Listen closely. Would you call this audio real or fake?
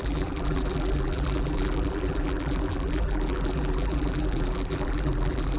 fake